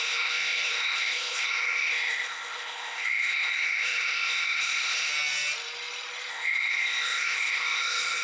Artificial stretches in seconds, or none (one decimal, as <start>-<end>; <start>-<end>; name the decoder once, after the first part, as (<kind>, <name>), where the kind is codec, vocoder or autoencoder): 0.0-5.1 (codec, ZipCodec); 6.3-8.2